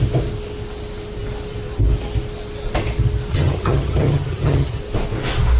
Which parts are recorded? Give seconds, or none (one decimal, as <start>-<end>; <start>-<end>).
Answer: 0.0-3.3; 4.8-5.6